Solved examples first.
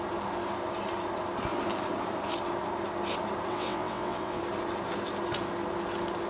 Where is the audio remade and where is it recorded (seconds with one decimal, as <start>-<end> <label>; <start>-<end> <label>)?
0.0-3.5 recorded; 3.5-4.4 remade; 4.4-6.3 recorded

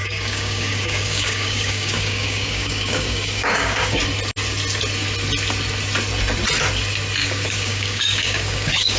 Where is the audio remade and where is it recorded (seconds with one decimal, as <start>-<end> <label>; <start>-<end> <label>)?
0.0-4.0 remade; 4.0-7.2 recorded; 7.2-9.0 remade

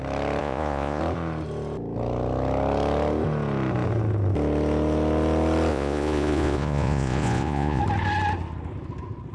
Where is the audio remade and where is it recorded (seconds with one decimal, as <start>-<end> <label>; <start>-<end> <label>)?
0.0-0.4 recorded; 0.4-1.0 remade; 1.0-5.7 recorded; 5.7-7.8 remade; 7.8-9.3 recorded

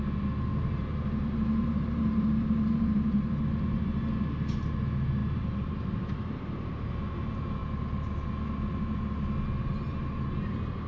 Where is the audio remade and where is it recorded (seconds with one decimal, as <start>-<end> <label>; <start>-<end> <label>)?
0.0-0.5 recorded; 0.5-3.4 remade; 3.4-5.2 recorded; 5.2-6.9 remade; 6.9-10.9 recorded

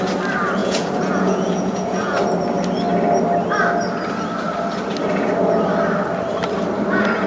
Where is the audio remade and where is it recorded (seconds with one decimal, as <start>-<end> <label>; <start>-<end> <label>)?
0.0-0.6 recorded; 0.6-2.2 remade; 2.2-7.3 recorded

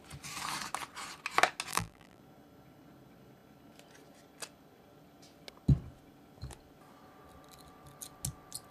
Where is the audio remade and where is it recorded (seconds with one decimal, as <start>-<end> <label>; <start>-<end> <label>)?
0.0-1.7 recorded; 1.7-2.2 remade; 2.2-8.7 recorded